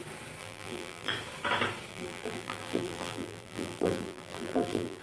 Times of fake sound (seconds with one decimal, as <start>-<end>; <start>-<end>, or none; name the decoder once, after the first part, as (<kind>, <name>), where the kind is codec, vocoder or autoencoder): 0.4-1.1 (vocoder, BigVGAN v2); 1.9-5.0